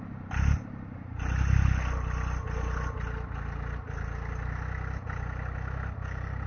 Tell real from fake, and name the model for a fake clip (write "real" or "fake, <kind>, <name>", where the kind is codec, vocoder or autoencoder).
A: real